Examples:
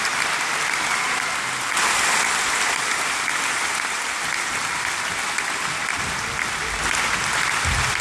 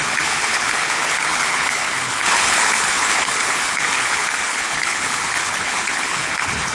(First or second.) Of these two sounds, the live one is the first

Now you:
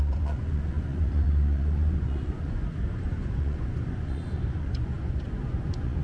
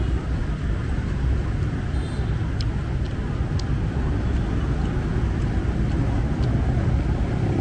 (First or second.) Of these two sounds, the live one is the second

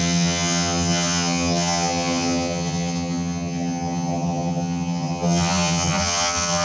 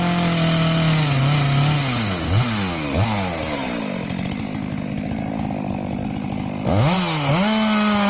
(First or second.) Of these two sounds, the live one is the second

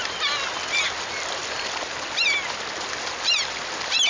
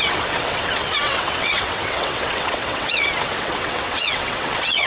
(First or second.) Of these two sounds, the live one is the first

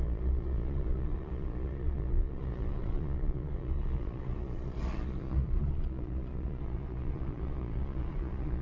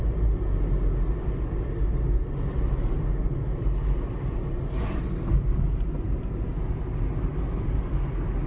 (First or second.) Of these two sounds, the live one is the second